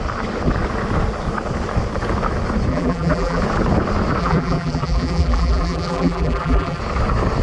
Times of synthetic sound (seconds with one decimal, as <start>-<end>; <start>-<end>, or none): 2.7-3.4; 4.2-6.8